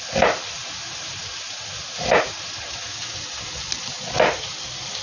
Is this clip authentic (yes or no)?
yes